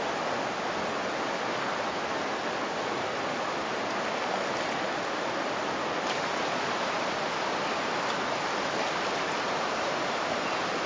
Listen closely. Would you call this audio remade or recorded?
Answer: recorded